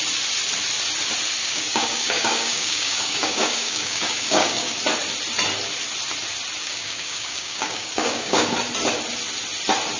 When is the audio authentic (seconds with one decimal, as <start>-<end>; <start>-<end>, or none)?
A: 0.0-1.4; 4.8-6.6; 8.5-10.0